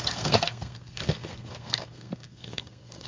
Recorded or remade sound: remade